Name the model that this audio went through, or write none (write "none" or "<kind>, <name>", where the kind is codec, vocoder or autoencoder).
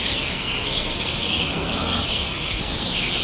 codec, SNAC